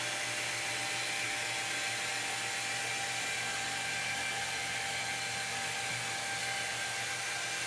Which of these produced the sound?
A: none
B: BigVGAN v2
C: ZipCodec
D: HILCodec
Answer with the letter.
A